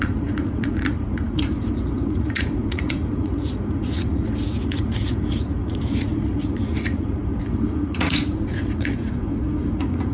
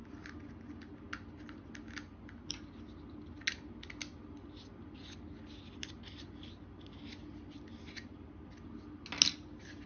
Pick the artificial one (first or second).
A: first